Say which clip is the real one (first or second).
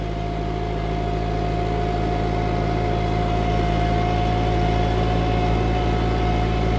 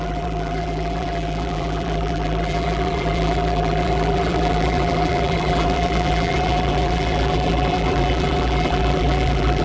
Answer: first